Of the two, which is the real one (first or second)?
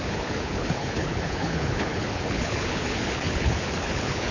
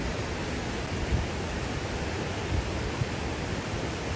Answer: second